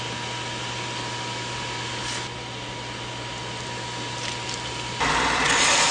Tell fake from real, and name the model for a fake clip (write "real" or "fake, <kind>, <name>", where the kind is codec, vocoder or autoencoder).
real